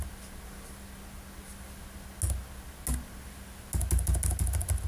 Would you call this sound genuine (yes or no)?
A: yes